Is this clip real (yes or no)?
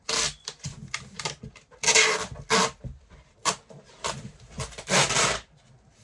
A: yes